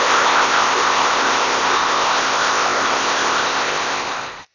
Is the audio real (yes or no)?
no